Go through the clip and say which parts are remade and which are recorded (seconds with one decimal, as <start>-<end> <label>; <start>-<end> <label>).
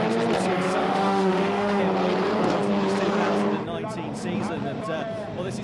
0.0-0.8 recorded; 0.8-1.8 remade; 1.8-5.6 recorded